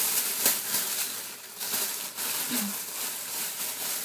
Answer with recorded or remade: recorded